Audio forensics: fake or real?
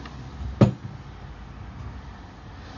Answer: real